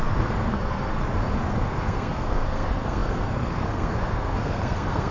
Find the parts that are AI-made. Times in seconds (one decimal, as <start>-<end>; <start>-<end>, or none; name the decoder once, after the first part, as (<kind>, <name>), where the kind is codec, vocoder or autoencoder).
0.0-1.0 (codec, SNAC); 1.5-5.1